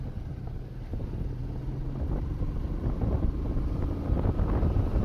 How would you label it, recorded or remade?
recorded